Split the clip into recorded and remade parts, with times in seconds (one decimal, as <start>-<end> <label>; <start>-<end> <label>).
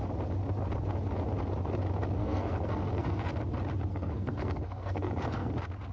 0.0-2.2 recorded; 2.2-3.3 remade; 3.3-3.9 recorded; 3.9-5.5 remade; 5.5-5.9 recorded